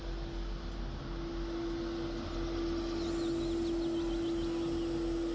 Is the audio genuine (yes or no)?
yes